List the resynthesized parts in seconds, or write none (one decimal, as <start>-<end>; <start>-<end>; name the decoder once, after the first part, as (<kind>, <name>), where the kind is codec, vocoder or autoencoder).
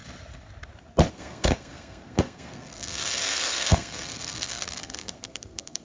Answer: 1.1-5.8 (codec, SNAC)